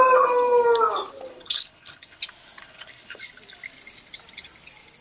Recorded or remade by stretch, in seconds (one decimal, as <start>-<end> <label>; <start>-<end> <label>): 0.0-1.3 recorded; 1.3-2.2 remade; 2.2-2.6 recorded; 2.6-3.2 remade; 3.2-5.0 recorded